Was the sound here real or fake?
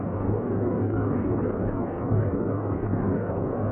fake